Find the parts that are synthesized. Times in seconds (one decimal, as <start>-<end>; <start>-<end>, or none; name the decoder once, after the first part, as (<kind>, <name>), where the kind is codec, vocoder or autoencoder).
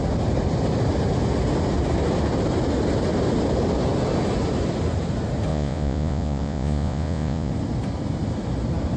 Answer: 5.5-7.5 (vocoder, Vocos)